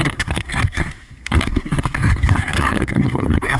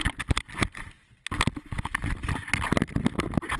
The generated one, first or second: first